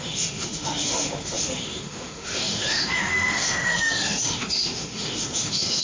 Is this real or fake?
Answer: fake